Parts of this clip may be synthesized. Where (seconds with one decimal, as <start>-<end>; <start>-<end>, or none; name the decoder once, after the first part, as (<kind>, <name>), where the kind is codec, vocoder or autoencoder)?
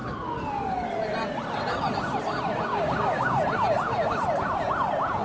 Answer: 2.7-3.4 (codec, DAC)